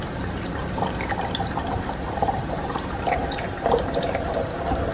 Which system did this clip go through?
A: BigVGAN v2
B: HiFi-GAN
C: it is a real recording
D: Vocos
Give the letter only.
A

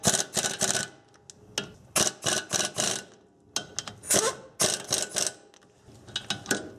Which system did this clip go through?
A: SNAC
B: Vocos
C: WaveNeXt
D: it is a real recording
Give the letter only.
D